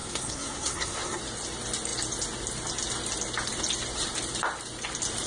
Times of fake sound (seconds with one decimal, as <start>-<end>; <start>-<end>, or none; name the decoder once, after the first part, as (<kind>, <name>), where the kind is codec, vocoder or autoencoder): 0.0-1.2 (codec, SNAC)